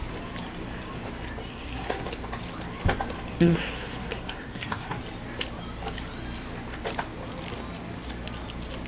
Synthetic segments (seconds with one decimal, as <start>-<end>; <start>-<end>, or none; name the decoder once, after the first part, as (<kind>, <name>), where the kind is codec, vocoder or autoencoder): 1.5-2.1 (codec, SNAC); 3.3-5.0